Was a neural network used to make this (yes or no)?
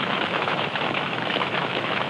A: yes